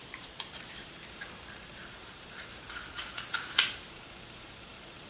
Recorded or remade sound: remade